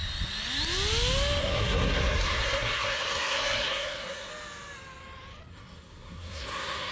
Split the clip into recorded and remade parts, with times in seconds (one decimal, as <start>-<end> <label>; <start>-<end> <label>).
0.0-1.4 recorded; 1.4-4.3 remade; 4.3-5.5 recorded; 5.5-6.9 remade